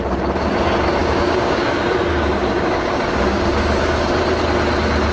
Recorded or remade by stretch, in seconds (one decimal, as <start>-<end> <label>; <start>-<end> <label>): 0.0-1.0 recorded; 1.0-4.1 remade; 4.1-5.1 recorded